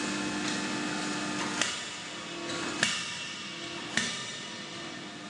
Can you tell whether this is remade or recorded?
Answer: recorded